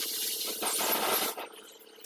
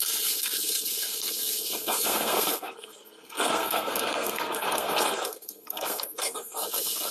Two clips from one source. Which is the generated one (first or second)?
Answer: second